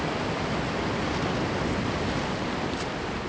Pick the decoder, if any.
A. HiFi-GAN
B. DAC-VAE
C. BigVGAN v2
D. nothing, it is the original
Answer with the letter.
D